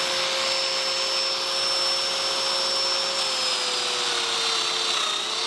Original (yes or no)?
yes